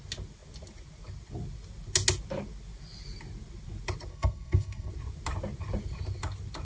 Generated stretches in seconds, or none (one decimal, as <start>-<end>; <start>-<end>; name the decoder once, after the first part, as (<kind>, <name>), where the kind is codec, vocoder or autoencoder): 4.1-4.9 (codec, SNAC)